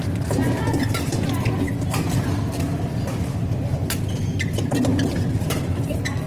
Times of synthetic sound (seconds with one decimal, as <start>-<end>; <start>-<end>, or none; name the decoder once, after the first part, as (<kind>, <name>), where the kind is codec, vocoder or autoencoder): none